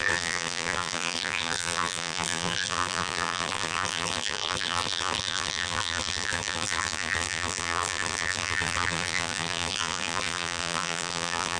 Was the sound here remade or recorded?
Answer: remade